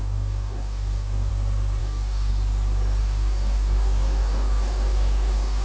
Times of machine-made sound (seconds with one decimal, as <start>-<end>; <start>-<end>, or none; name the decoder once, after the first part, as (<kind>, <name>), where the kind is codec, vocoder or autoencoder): 0.0-1.3 (codec, DAC); 1.8-2.3; 3.0-5.6